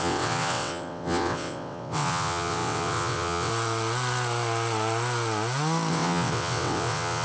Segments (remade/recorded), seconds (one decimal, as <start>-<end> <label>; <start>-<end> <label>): 0.0-3.5 remade; 3.5-5.9 recorded; 5.9-7.2 remade